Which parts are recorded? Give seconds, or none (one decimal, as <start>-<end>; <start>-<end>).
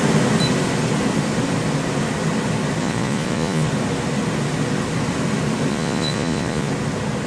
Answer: 0.0-2.8; 3.7-5.7; 6.7-7.3